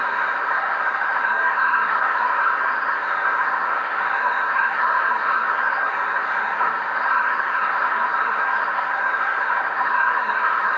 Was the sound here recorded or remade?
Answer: remade